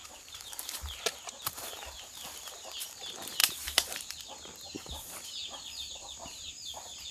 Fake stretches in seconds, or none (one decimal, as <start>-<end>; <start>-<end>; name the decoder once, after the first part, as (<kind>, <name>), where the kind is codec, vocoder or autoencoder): 0.0-3.0 (vocoder, BigVGAN v2); 3.4-6.5